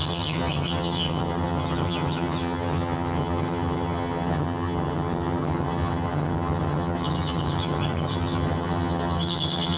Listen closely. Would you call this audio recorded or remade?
remade